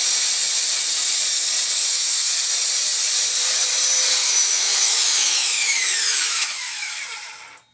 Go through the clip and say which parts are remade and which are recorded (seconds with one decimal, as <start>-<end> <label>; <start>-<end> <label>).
0.0-1.8 recorded; 1.8-2.3 remade; 2.3-4.2 recorded; 4.2-7.0 remade; 7.0-7.7 recorded